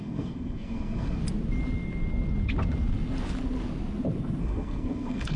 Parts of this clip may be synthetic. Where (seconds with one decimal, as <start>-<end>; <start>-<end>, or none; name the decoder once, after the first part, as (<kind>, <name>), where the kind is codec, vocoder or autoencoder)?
0.0-1.2 (codec, SNAC); 4.4-5.4